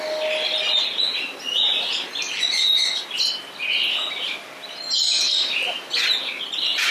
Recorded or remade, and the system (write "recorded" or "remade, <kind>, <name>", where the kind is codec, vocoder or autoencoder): recorded